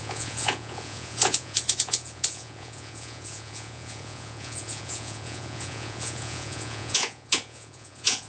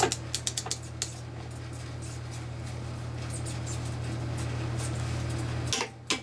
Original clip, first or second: second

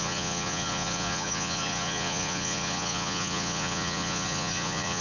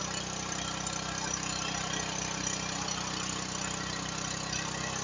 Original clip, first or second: second